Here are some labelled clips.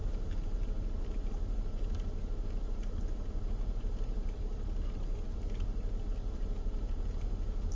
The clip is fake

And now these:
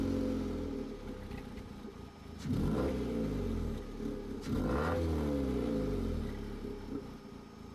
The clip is real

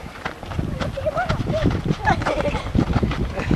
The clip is fake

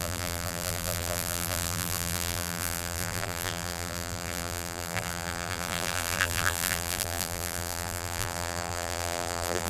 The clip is fake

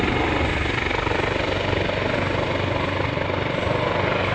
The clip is real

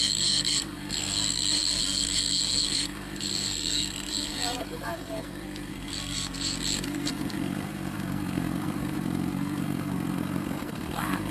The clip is fake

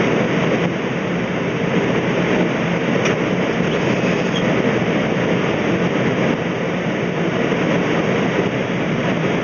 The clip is real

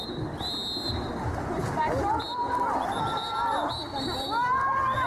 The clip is real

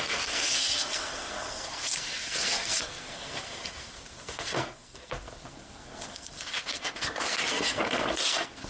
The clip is fake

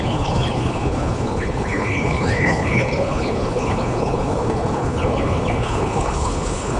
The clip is fake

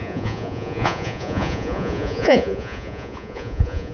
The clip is fake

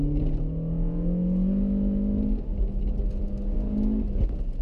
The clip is real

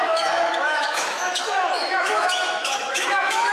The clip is fake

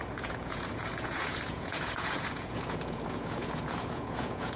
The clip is fake